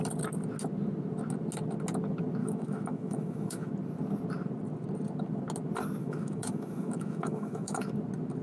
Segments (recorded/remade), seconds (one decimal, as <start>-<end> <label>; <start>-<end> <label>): 0.0-2.4 recorded; 2.4-3.7 remade; 3.7-6.0 recorded; 6.0-7.9 remade; 7.9-8.4 recorded